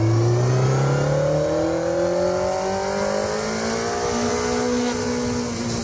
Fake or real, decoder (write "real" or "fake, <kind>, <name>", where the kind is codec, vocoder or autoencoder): real